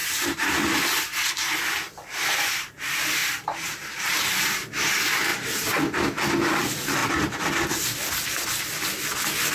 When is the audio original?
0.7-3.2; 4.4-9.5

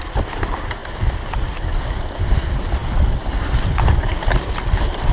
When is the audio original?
0.0-5.1

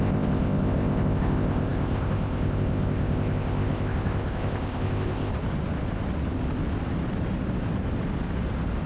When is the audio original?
5.3-8.9

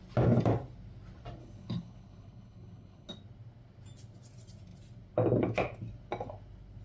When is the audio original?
0.0-1.4; 3.1-6.8